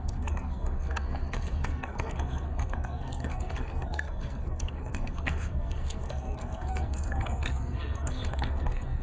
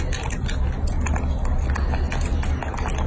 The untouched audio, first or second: second